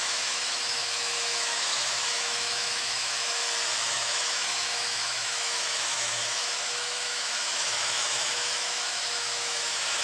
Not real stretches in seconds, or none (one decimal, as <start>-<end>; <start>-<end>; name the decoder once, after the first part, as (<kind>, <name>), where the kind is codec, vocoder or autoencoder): 0.0-3.4 (autoencoder, DAC-VAE); 3.9-10.0